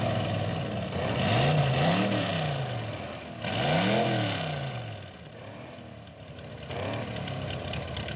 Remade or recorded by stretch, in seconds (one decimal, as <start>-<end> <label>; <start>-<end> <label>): 0.0-0.5 remade; 0.5-1.6 recorded; 1.6-2.3 remade; 2.3-4.7 recorded; 4.7-8.2 remade